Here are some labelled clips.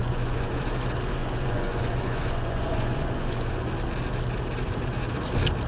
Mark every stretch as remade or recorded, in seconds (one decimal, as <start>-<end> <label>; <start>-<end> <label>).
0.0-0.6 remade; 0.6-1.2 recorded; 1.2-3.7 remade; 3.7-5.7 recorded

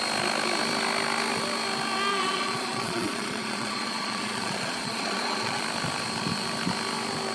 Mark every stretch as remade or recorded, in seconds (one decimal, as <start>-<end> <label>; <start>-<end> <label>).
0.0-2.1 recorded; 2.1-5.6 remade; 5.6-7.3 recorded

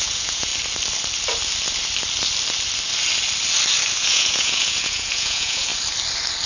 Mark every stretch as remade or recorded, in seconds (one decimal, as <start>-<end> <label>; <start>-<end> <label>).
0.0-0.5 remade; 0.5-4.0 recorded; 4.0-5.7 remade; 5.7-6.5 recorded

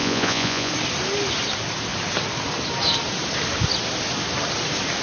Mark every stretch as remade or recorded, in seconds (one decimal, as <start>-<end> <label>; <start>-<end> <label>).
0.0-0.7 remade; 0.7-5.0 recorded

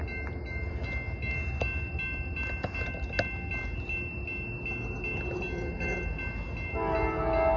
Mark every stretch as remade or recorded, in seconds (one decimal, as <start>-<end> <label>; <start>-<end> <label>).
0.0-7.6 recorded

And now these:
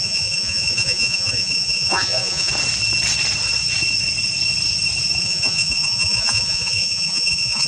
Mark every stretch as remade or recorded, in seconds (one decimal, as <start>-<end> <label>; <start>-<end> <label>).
0.0-2.5 remade; 2.5-5.2 recorded; 5.2-7.7 remade